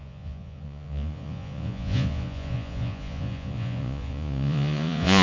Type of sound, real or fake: fake